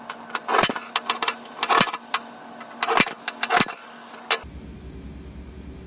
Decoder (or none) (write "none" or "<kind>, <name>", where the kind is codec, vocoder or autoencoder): none